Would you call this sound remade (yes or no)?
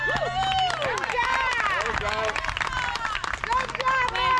no